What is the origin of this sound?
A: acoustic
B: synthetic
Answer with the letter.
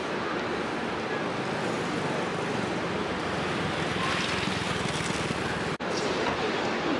A